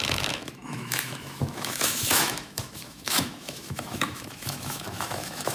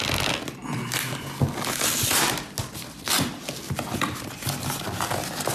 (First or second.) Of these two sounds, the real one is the second